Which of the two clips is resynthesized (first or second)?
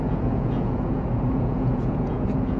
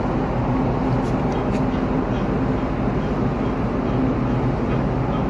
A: first